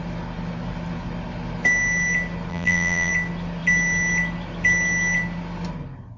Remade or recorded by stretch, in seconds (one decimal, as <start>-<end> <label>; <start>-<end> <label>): 0.0-2.5 recorded; 2.5-3.1 remade; 3.1-6.2 recorded